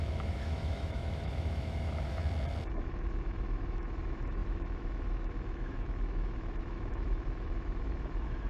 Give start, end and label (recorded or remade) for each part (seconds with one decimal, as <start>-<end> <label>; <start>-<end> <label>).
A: 0.0-2.2 remade; 2.2-2.7 recorded; 2.7-8.5 remade